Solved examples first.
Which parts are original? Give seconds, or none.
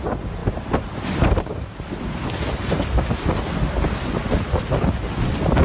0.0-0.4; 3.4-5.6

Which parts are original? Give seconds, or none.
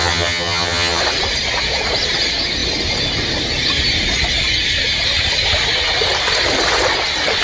1.0-7.4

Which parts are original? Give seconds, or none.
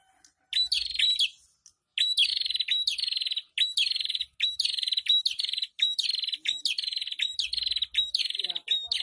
0.0-9.0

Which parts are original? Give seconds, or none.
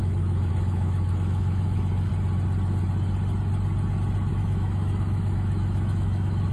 2.1-4.3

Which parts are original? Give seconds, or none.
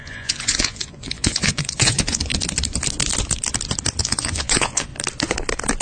2.3-4.0; 4.9-5.8